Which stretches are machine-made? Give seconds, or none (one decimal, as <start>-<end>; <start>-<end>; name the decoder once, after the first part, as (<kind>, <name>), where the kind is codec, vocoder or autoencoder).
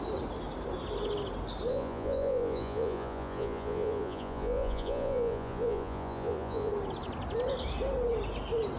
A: 1.7-6.7 (vocoder, Vocos)